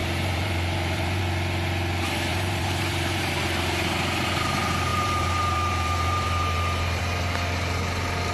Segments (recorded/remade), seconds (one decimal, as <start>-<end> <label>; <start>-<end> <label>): 0.0-1.2 remade; 1.2-2.3 recorded; 2.3-3.3 remade; 3.3-4.9 recorded; 4.9-7.0 remade; 7.0-8.3 recorded